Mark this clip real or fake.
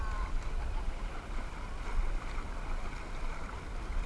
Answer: real